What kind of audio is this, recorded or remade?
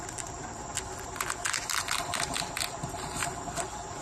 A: recorded